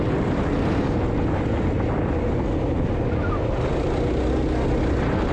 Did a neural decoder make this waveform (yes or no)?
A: no